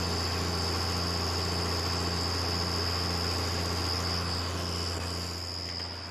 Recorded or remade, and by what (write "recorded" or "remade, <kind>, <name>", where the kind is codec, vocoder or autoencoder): recorded